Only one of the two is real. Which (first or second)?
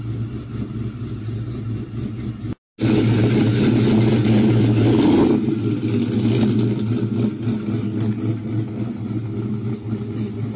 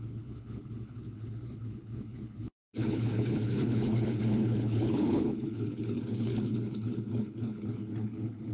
first